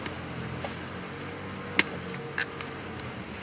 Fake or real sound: real